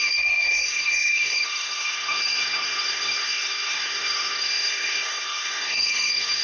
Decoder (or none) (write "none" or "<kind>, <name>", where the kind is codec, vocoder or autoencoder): codec, SNAC